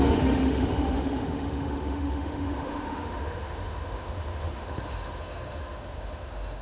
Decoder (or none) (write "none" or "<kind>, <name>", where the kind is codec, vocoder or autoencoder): autoencoder, DAC-VAE